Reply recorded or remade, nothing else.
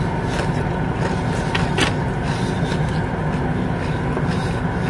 recorded